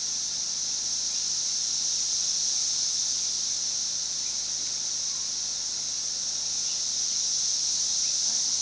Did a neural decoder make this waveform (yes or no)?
no